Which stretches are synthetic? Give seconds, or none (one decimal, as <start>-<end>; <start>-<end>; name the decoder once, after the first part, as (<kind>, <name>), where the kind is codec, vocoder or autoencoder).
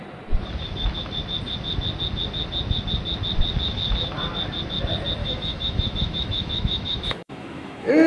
5.2-8.1 (autoencoder, DAC-VAE)